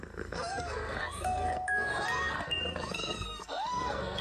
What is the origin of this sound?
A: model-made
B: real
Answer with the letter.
A